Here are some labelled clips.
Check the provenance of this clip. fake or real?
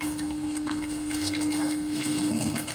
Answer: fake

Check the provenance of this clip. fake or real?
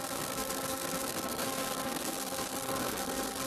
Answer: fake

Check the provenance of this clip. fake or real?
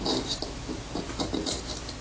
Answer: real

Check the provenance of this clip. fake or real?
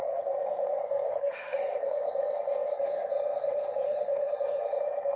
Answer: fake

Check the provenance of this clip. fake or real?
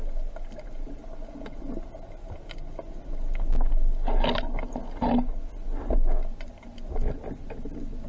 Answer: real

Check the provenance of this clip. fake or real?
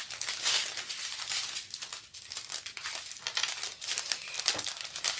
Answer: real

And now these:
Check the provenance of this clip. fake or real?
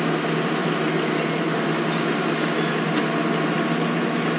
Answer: real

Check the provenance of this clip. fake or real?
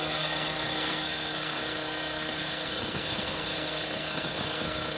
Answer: fake